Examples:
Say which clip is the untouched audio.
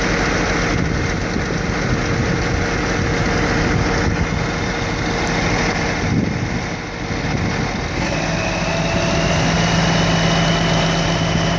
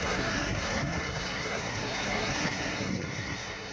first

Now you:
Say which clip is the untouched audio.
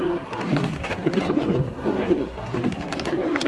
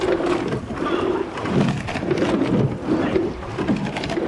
second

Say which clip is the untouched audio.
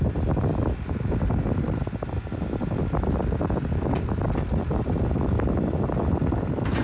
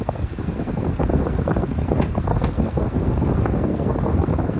first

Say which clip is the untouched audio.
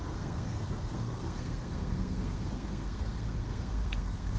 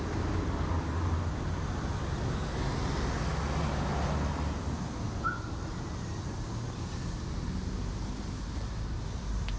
second